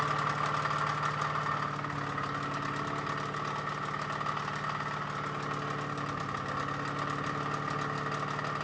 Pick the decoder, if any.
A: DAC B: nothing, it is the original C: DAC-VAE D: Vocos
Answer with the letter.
B